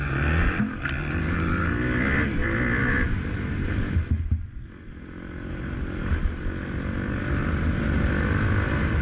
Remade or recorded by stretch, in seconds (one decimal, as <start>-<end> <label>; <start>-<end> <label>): 0.0-9.0 recorded